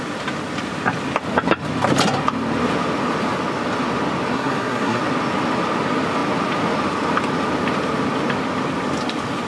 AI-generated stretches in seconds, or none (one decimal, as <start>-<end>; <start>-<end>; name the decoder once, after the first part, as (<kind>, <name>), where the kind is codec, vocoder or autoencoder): 4.3-5.0 (codec, SNAC)